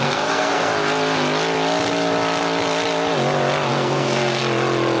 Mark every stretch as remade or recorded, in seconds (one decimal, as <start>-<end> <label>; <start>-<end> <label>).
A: 0.0-0.7 remade; 0.7-3.7 recorded; 3.7-4.4 remade; 4.4-5.0 recorded